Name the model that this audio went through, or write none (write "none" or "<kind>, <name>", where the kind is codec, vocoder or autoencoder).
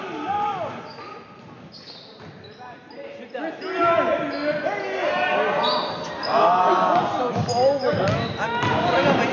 none